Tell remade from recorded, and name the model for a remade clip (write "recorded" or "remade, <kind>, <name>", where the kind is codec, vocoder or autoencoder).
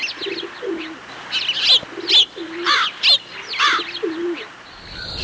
recorded